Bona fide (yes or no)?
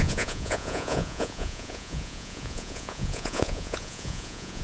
no